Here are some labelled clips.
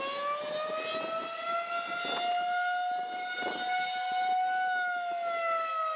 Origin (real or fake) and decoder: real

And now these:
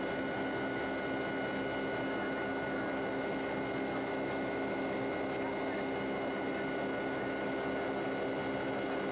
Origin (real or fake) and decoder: real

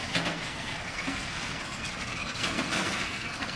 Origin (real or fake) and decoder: fake, codec, SNAC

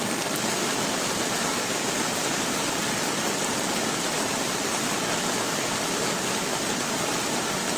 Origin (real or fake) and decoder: real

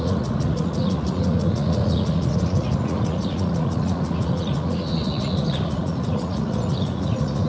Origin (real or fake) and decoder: fake, vocoder, Vocos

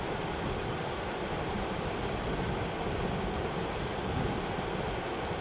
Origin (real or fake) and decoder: real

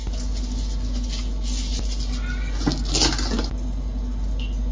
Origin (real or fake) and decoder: real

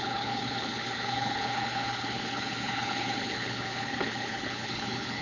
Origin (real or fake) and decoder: fake, codec, HILCodec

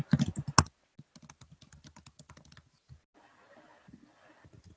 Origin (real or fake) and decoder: real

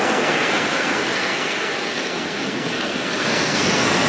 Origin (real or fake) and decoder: fake, codec, SNAC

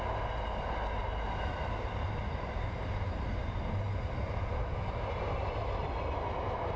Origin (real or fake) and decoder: real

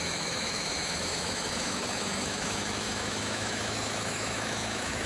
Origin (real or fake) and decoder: fake, autoencoder, DAC-VAE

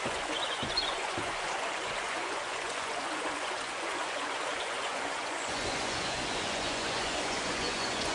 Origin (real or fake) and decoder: fake, vocoder, Vocos